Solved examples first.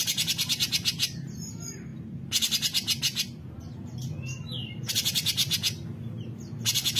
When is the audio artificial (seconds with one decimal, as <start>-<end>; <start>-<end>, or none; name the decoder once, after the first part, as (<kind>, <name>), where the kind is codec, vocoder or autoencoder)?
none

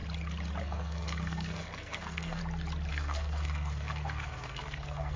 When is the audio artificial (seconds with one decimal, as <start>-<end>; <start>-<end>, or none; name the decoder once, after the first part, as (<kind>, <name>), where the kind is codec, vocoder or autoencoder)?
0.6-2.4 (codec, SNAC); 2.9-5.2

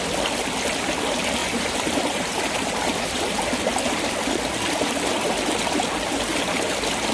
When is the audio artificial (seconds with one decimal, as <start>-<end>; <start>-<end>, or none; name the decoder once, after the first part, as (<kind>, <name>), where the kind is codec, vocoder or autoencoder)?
1.4-3.4 (vocoder, BigVGAN v2)

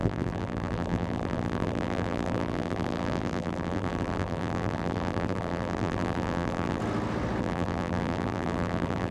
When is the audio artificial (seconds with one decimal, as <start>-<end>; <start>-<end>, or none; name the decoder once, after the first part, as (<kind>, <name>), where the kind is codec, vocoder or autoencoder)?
0.0-6.8 (vocoder, BigVGAN v2); 7.4-9.1